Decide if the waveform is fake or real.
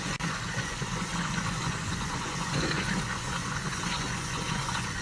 fake